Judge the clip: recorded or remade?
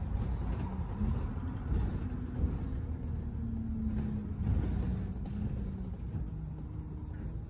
recorded